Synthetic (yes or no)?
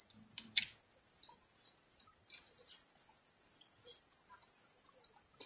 no